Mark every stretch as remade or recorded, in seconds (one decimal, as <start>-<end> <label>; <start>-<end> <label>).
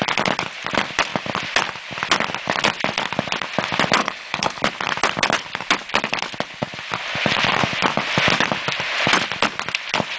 0.0-4.0 recorded; 4.0-4.6 remade; 4.6-10.2 recorded